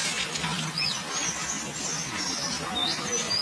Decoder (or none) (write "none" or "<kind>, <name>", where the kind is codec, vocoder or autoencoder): none